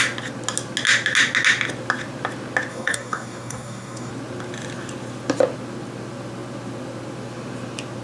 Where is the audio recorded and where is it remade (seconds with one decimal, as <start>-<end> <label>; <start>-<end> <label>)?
0.0-2.7 recorded; 2.7-4.1 remade; 4.1-8.0 recorded